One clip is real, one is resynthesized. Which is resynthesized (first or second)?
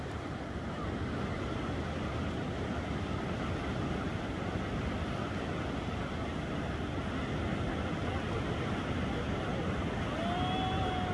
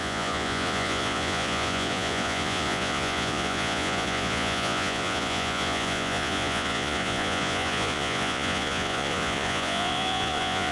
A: second